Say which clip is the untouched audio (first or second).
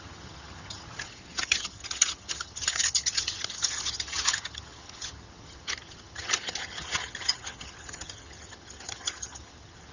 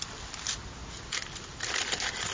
second